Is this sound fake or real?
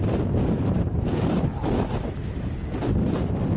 real